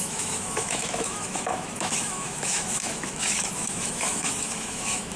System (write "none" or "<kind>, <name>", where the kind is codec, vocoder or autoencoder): autoencoder, DAC-VAE